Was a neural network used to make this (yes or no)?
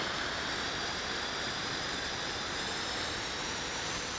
yes